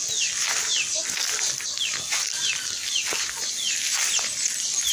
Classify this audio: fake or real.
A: real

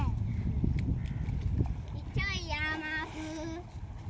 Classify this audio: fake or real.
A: real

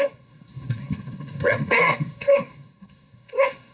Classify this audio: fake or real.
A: fake